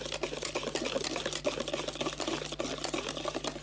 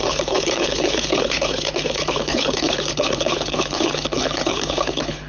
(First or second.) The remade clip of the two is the second